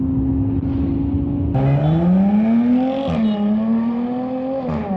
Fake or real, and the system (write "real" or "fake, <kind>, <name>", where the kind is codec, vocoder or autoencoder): real